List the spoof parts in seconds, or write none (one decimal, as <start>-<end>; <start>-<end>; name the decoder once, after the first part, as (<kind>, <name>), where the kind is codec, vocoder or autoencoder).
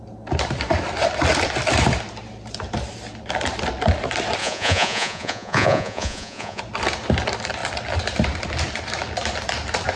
4.4-6.6 (vocoder, Vocos)